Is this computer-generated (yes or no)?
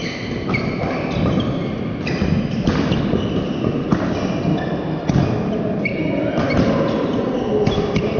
no